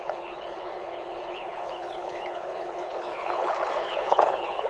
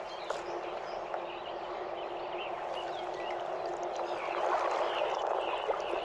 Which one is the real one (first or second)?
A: second